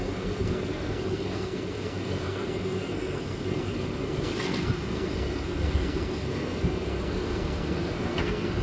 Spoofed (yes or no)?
yes